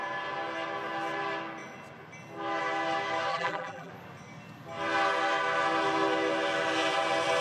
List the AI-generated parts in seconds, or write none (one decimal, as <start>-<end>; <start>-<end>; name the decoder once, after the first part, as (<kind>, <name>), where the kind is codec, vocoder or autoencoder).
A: 3.3-3.9 (vocoder, BigVGAN v2)